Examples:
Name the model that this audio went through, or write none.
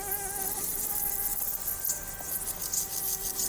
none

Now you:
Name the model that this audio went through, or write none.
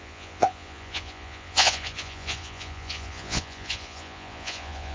vocoder, Vocos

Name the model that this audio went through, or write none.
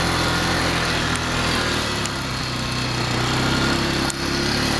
none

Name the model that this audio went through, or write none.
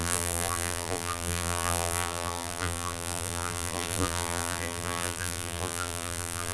vocoder, BigVGAN v2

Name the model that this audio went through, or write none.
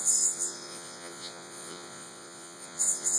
vocoder, Vocos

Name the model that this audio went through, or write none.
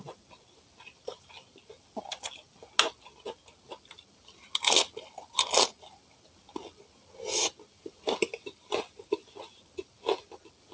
none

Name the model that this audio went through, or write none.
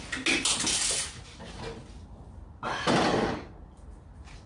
none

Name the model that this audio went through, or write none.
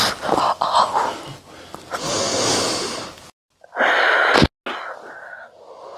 none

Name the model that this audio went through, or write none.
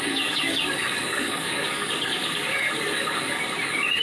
codec, DAC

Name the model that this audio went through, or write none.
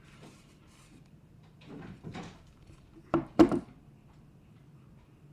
vocoder, BigVGAN v2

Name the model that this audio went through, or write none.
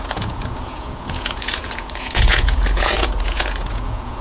vocoder, Vocos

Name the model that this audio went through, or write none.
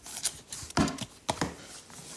none